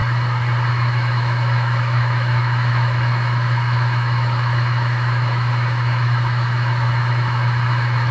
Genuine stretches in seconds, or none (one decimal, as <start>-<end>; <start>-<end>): 0.0-0.7